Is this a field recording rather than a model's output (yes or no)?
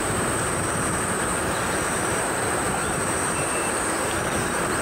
no